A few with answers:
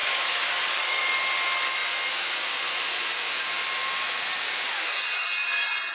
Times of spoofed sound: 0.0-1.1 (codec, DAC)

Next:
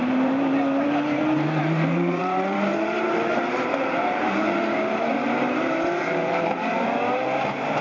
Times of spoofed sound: 0.0-7.8 (vocoder, BigVGAN v2)

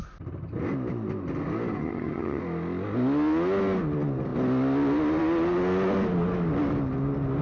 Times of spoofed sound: 1.8-2.4 (vocoder, HiFi-GAN)